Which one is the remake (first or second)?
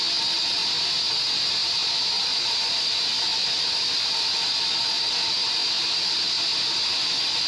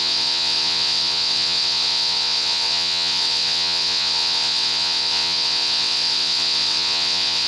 second